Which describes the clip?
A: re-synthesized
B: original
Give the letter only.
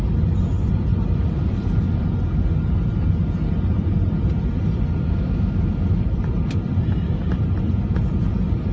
B